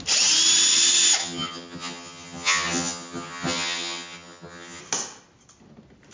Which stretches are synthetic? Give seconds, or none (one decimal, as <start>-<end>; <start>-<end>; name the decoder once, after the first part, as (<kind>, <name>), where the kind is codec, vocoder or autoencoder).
1.2-4.8 (vocoder, HiFi-GAN)